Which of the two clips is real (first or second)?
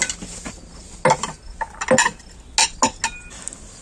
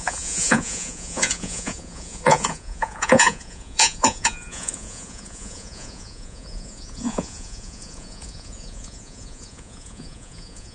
first